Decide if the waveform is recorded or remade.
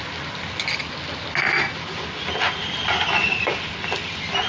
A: recorded